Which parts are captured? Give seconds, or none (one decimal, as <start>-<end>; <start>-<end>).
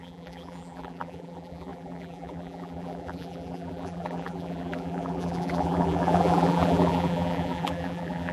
none